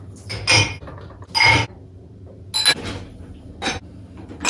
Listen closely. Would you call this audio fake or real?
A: real